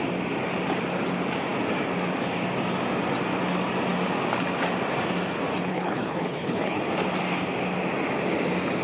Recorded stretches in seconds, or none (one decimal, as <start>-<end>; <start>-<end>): 0.0-5.7; 6.8-8.8